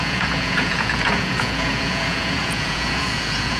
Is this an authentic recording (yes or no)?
no